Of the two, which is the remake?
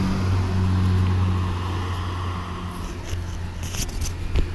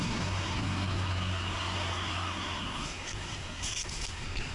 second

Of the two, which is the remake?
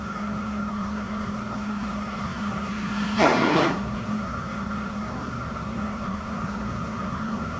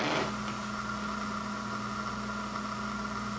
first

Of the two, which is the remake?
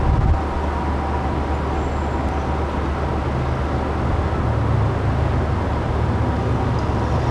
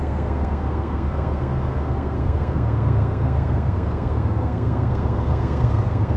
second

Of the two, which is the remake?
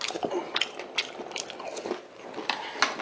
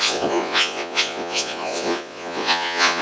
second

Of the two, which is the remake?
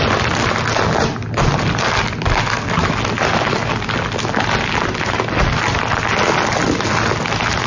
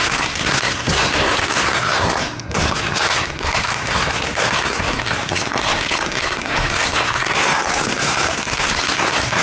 second